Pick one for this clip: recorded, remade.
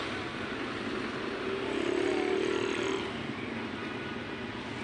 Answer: recorded